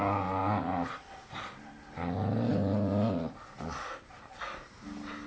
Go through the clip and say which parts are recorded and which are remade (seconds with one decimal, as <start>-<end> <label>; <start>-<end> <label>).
0.0-5.3 recorded